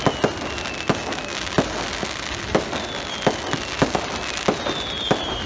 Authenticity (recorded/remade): recorded